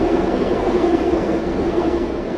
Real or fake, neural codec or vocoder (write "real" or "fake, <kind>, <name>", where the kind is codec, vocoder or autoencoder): fake, codec, SNAC